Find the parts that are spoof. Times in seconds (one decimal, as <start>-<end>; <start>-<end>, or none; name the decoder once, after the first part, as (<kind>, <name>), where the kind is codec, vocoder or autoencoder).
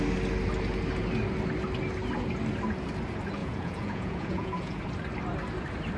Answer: 3.4-4.8 (vocoder, Vocos)